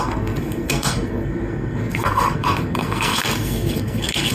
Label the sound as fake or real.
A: fake